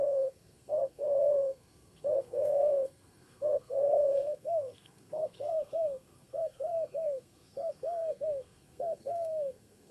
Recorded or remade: remade